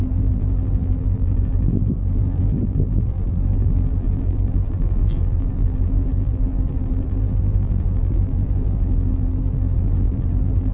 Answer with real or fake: fake